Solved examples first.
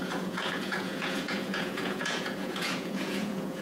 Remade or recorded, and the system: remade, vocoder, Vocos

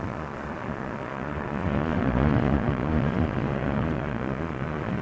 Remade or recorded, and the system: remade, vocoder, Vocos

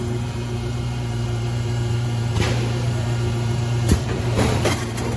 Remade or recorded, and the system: remade, vocoder, BigVGAN v2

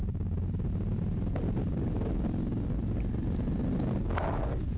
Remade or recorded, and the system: recorded